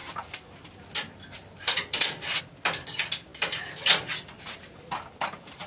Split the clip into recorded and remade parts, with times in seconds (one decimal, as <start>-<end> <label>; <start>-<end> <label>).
0.0-5.7 recorded